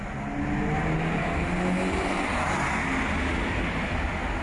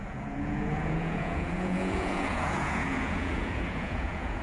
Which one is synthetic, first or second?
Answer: second